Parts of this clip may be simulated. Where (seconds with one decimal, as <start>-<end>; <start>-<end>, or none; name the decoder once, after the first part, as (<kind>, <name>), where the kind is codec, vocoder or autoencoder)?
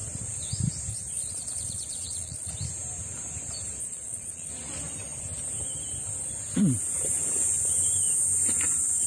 0.9-2.5 (vocoder, Vocos); 3.8-4.5